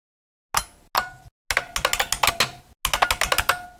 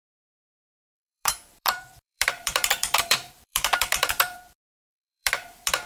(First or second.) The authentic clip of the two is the first